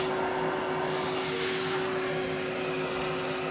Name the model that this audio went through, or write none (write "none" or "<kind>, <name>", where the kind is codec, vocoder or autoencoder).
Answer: none